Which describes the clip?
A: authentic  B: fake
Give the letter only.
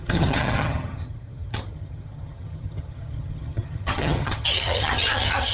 B